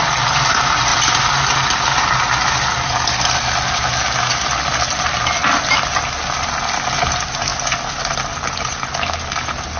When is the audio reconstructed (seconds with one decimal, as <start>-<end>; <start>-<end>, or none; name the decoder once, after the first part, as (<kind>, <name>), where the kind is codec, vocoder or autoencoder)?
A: none